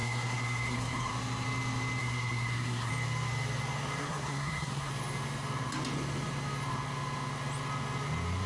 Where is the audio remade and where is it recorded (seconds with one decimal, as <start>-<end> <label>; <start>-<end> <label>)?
0.0-1.1 remade; 1.1-2.0 recorded; 2.0-2.9 remade; 2.9-4.0 recorded; 4.0-4.9 remade; 4.9-8.5 recorded